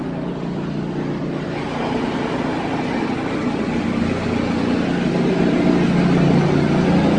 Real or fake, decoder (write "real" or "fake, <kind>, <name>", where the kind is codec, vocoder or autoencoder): real